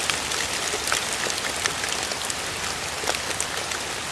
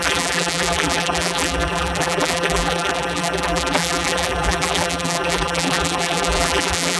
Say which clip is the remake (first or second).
second